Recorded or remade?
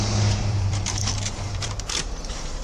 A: remade